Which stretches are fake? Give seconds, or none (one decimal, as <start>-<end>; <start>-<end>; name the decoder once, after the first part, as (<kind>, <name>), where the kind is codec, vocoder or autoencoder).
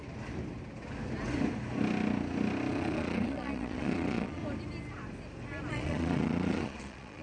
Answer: 2.7-4.4 (vocoder, Vocos); 5.7-7.2